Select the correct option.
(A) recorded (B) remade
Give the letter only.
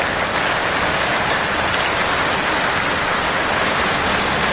A